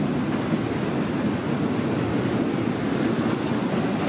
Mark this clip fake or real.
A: real